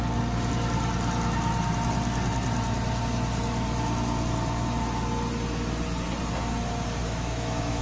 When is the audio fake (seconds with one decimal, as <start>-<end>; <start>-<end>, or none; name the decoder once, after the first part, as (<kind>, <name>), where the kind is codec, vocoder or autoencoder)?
7.0-7.8 (autoencoder, DAC-VAE)